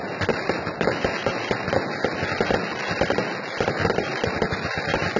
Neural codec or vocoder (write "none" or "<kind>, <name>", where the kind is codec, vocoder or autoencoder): none